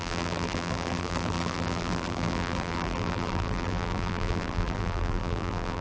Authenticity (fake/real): fake